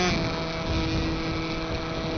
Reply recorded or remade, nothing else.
recorded